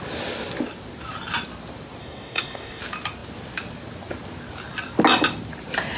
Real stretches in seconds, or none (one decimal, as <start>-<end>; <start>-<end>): 0.0-2.0; 2.8-6.0